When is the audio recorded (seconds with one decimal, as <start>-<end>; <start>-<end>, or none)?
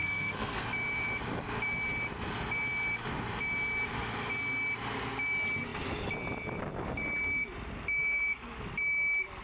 0.6-9.4